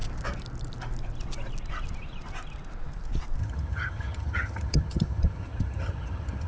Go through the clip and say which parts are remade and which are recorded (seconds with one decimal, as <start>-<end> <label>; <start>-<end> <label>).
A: 0.0-3.4 recorded; 3.4-6.5 remade